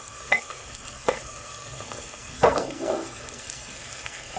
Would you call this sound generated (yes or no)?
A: yes